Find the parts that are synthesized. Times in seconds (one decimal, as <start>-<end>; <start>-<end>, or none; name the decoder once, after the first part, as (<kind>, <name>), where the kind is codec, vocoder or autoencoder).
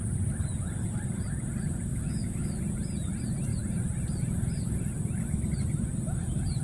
1.9-2.6 (autoencoder, DAC-VAE)